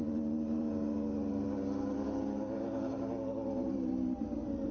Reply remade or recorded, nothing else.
recorded